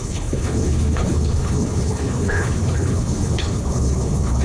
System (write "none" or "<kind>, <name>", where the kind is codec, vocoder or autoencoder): codec, HILCodec